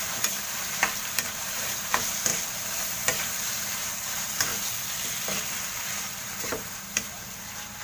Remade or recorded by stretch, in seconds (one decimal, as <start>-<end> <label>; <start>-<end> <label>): 0.0-2.3 remade; 2.3-2.8 recorded; 2.8-4.5 remade; 4.5-5.8 recorded; 5.8-7.8 remade